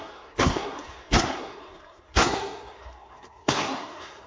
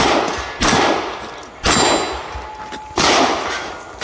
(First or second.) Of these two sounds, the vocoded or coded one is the first